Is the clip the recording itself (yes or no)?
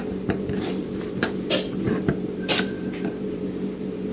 no